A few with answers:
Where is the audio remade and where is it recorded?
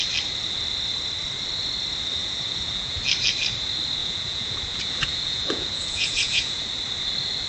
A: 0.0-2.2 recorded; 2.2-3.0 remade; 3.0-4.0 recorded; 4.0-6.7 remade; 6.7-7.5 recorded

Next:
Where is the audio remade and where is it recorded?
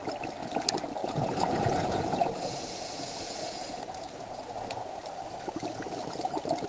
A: 0.0-1.0 recorded; 1.0-5.0 remade; 5.0-6.7 recorded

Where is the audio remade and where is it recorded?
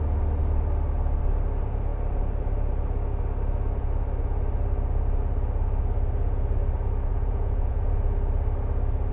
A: 0.0-7.1 recorded; 7.1-7.9 remade; 7.9-9.1 recorded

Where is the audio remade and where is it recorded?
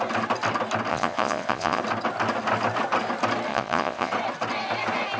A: 0.0-0.9 recorded; 0.9-1.8 remade; 1.8-3.5 recorded; 3.5-4.1 remade; 4.1-5.2 recorded